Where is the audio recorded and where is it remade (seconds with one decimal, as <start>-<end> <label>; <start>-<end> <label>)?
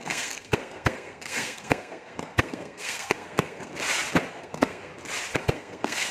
0.0-3.7 remade; 3.7-4.3 recorded; 4.3-4.9 remade; 4.9-5.4 recorded; 5.4-6.1 remade